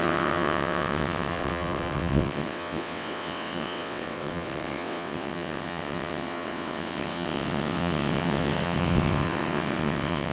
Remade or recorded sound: remade